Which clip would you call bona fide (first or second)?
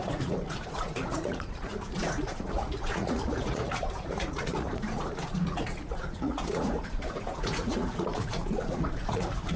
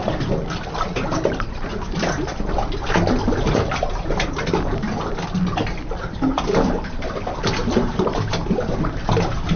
second